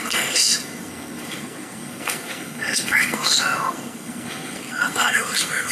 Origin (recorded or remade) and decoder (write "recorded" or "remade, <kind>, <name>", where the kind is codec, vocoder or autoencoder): remade, codec, SNAC